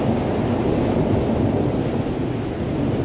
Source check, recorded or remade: recorded